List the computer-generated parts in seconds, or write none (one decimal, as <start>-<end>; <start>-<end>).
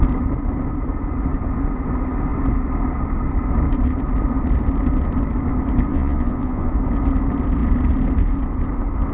5.9-6.7